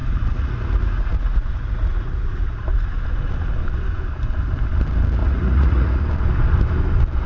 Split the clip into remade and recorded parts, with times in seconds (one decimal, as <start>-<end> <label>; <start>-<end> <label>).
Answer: 0.0-2.9 remade; 2.9-5.2 recorded; 5.2-6.0 remade; 6.0-7.3 recorded